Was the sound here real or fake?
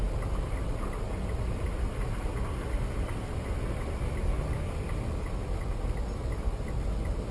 real